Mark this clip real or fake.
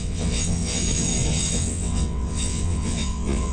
fake